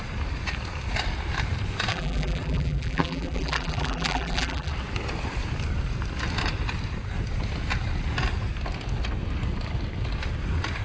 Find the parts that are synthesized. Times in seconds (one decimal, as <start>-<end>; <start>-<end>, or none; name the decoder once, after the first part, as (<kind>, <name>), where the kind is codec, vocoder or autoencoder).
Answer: 1.9-4.7 (vocoder, BigVGAN v2)